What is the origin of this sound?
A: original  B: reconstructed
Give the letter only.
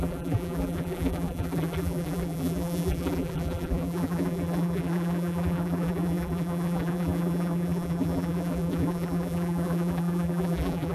B